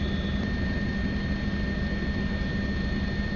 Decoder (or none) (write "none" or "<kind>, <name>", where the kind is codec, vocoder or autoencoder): none